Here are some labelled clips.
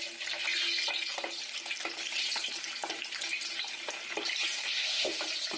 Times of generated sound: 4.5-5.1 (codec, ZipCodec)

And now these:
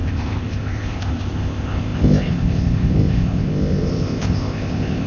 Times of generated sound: 0.0-5.1 (codec, ZipCodec)

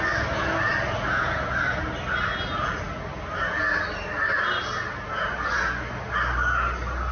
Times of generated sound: none